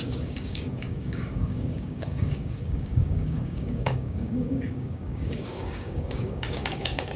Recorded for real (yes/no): no